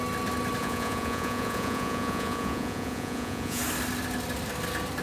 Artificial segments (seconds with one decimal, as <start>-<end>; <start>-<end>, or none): 0.6-3.6